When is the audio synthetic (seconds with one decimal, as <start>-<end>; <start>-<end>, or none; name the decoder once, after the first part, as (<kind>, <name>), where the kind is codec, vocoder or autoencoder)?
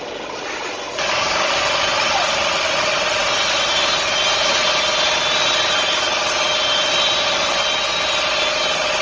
0.9-1.5 (codec, DAC)